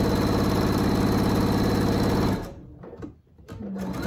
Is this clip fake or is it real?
real